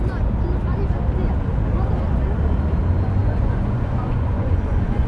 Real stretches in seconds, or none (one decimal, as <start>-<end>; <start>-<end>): 0.0-3.2